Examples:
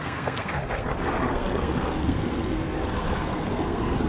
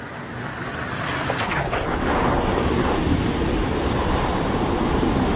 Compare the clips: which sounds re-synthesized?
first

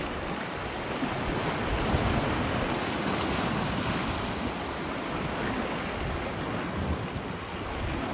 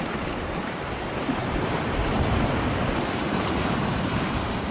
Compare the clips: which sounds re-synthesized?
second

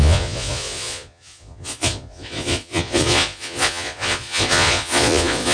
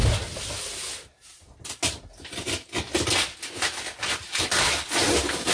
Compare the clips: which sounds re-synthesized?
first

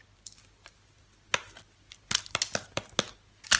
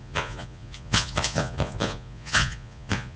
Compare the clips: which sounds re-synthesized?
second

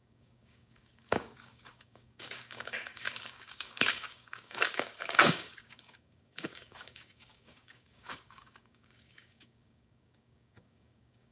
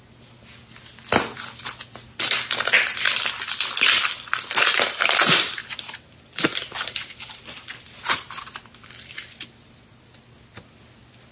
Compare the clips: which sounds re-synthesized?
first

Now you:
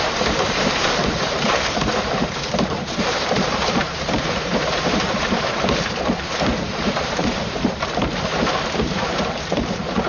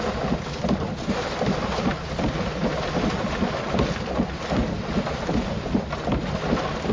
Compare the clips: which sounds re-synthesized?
first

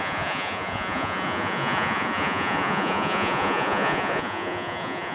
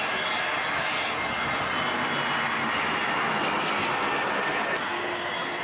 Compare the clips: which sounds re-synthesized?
first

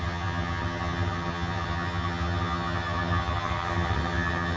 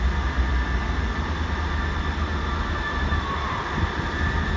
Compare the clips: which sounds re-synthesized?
first